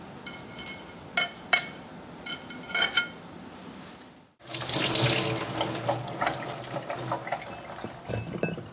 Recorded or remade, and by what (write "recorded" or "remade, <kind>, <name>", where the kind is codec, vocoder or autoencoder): recorded